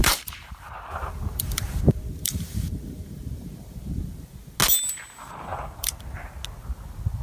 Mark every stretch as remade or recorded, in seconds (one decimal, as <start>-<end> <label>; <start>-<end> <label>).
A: 0.0-4.3 remade; 4.3-5.5 recorded; 5.5-6.2 remade; 6.2-7.2 recorded